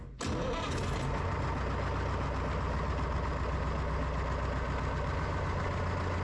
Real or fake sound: real